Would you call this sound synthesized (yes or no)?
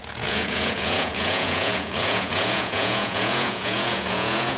yes